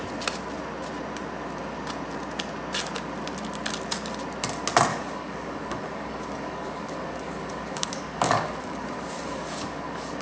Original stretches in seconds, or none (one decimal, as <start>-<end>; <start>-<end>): 0.0-4.9